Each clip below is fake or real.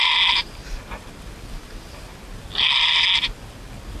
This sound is real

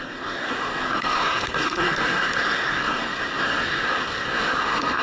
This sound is fake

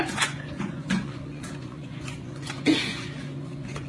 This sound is fake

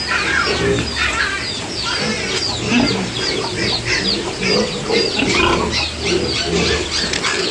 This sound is real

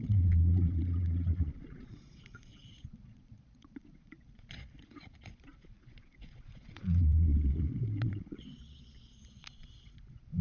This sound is fake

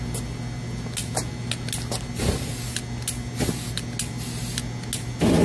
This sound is real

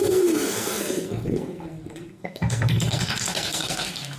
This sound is fake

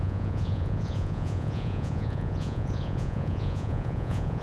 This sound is fake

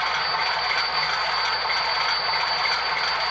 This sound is real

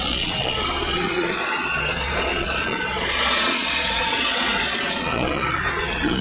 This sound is fake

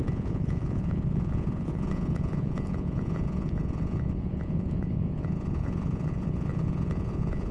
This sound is fake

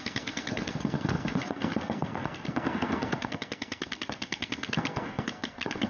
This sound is fake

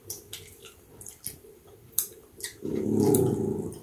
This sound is fake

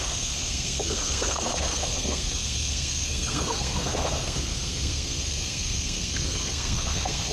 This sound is fake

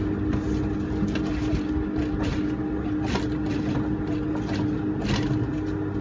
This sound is real